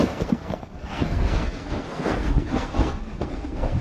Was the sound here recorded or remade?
remade